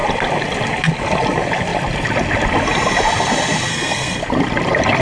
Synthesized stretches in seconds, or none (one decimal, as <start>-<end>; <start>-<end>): 3.7-4.2